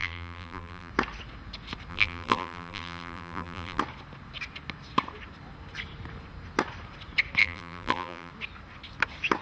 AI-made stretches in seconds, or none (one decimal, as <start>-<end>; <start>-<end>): 0.0-0.9; 1.9-3.8; 7.4-8.3